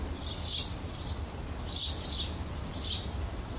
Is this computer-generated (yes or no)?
no